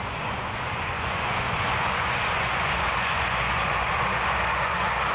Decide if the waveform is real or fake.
fake